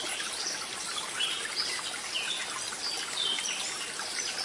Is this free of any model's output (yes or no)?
yes